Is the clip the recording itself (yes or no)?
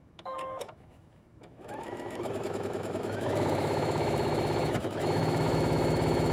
no